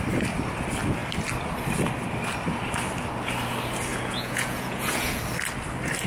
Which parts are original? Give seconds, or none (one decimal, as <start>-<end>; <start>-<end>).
0.0-3.9; 5.2-6.1